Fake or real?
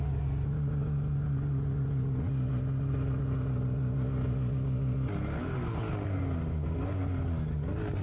real